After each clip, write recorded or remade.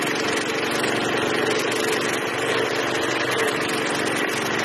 recorded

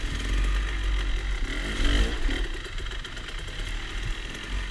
recorded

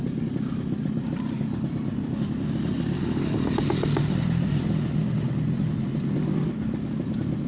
recorded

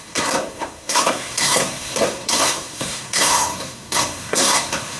remade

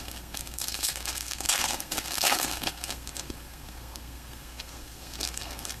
remade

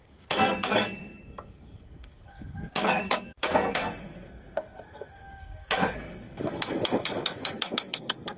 remade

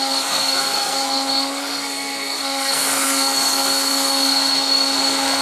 remade